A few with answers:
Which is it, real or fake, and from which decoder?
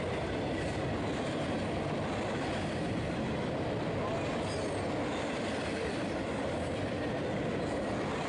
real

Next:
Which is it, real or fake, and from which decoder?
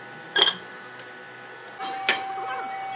real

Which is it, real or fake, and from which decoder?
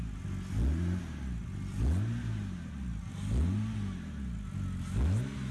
real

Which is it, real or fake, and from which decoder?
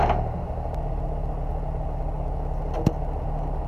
real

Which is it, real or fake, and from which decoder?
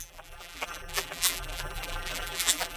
fake, vocoder, BigVGAN v2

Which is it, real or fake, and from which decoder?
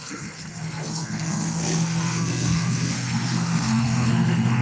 fake, codec, SNAC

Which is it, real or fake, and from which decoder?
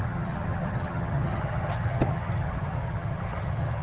fake, vocoder, HiFi-GAN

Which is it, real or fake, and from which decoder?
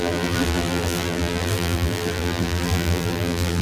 fake, vocoder, BigVGAN v2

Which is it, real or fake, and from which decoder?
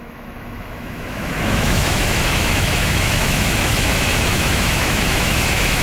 fake, autoencoder, DAC-VAE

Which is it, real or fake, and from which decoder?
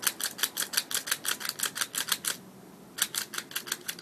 real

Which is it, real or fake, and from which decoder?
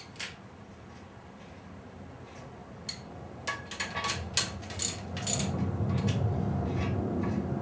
real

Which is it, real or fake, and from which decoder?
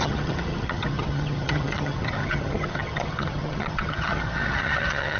fake, vocoder, HiFi-GAN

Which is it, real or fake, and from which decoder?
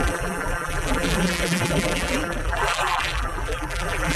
fake, vocoder, BigVGAN v2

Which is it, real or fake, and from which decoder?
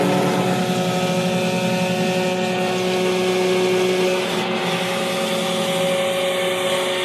real